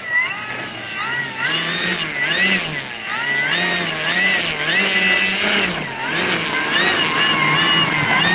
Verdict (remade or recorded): recorded